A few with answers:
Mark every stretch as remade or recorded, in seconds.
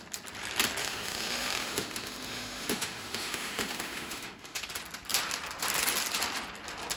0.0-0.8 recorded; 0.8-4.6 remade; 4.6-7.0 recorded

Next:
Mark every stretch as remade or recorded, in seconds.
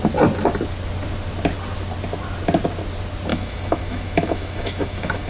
0.0-3.3 recorded; 3.3-5.3 remade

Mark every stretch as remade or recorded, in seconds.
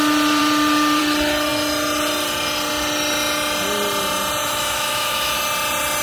0.0-4.4 recorded; 4.4-5.4 remade; 5.4-6.0 recorded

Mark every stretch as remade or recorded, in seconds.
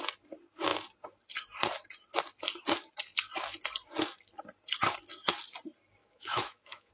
0.0-6.0 recorded; 6.0-6.9 remade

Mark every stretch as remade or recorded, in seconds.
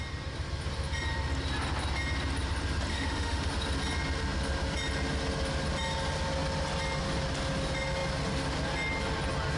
0.0-2.9 recorded; 2.9-3.5 remade; 3.5-9.6 recorded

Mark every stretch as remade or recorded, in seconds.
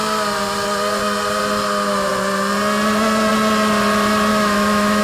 0.0-4.3 recorded; 4.3-5.0 remade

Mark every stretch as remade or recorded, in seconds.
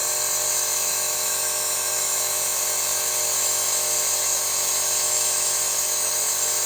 0.0-0.5 recorded; 0.5-6.7 remade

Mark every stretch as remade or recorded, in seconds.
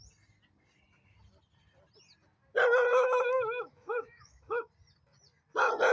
0.0-2.9 recorded; 2.9-4.7 remade; 4.7-5.9 recorded